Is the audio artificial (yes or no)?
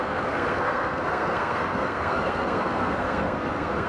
yes